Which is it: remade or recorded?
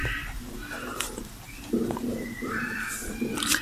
remade